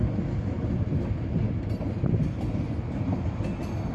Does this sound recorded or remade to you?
recorded